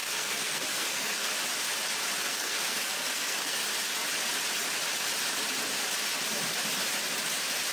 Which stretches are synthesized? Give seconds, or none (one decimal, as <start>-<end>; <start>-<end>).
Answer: 0.0-1.3; 2.2-3.6